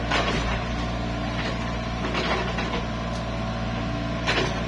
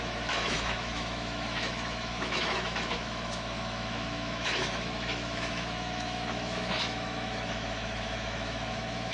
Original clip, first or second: first